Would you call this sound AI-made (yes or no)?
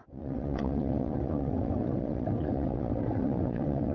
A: yes